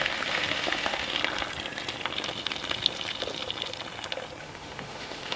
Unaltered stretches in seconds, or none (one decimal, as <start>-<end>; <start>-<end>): 1.2-4.4